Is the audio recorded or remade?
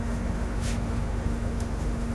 remade